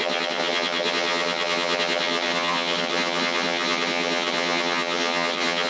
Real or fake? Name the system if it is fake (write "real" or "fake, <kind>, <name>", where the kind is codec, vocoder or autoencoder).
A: fake, vocoder, HiFi-GAN